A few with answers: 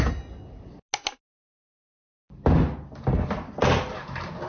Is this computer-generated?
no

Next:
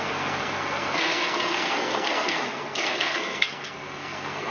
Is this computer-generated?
yes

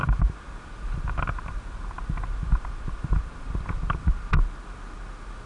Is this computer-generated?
no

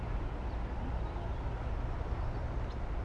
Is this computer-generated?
no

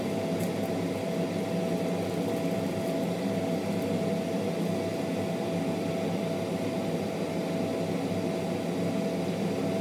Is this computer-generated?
no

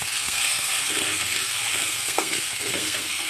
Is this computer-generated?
yes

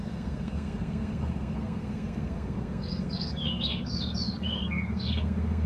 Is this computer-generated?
yes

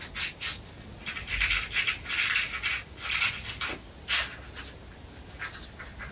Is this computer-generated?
no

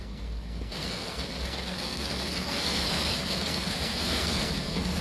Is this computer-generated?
yes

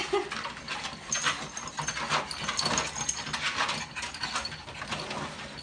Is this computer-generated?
no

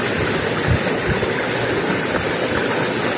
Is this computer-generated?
no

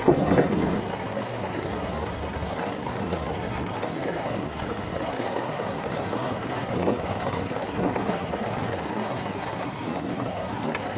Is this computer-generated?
yes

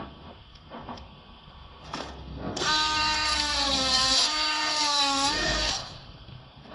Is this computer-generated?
yes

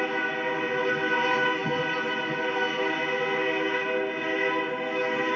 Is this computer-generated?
no